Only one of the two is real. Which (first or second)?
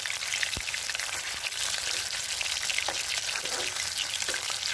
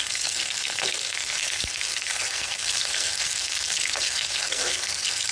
first